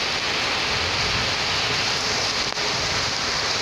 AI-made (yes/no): no